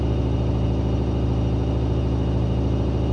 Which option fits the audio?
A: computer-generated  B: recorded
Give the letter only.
B